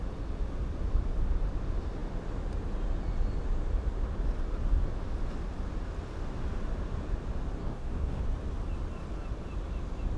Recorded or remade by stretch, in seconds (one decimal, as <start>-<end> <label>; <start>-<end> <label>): 0.0-7.6 recorded; 7.6-8.2 remade; 8.2-10.2 recorded